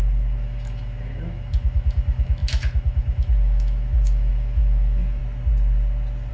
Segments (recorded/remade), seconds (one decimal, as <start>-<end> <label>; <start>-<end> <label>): 0.0-5.2 remade; 5.2-6.3 recorded